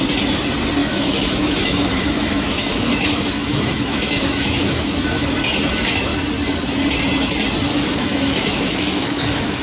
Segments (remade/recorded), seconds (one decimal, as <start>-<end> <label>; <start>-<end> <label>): 0.0-0.8 recorded; 0.8-5.3 remade; 5.3-7.7 recorded; 7.7-9.6 remade